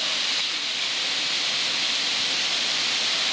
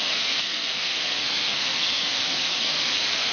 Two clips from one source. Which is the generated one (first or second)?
second